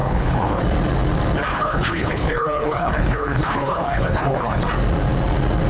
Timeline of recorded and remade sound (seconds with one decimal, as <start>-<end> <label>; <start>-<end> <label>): 0.0-0.6 remade; 0.6-1.5 recorded; 1.5-4.6 remade; 4.6-5.7 recorded